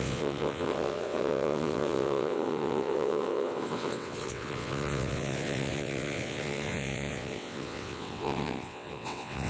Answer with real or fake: fake